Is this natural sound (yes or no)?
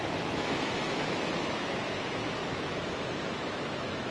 no